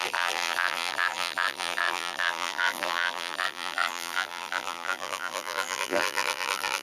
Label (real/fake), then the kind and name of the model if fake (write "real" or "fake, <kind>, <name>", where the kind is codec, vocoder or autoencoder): fake, vocoder, BigVGAN v2